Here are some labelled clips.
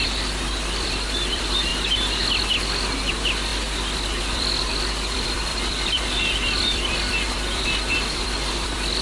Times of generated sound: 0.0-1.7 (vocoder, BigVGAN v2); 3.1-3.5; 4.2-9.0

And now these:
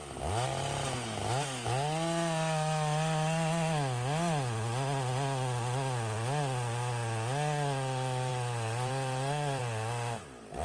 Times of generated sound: 8.3-9.6 (vocoder, BigVGAN v2)

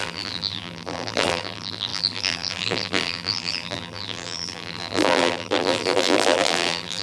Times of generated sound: 0.0-7.0 (vocoder, BigVGAN v2)

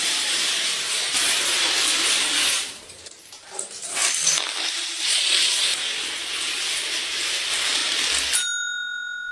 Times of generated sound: 0.0-4.0 (vocoder, BigVGAN v2); 4.6-5.7; 6.3-7.8

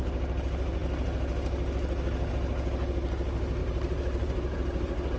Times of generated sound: 3.6-5.2 (vocoder, BigVGAN v2)

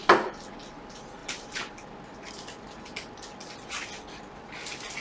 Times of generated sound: none